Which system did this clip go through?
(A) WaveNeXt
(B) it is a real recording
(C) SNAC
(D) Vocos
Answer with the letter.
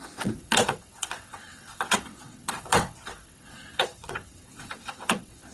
A